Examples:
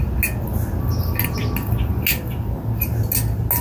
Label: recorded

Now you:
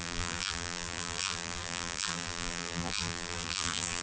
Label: remade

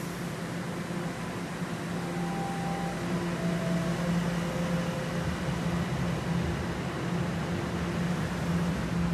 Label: recorded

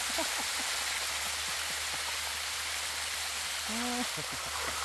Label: recorded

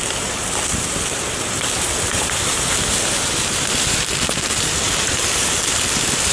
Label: remade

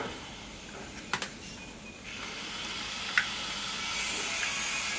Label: recorded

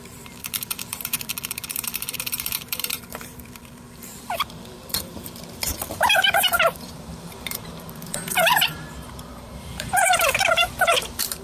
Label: remade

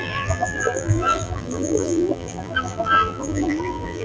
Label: remade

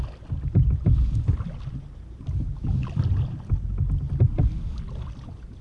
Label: recorded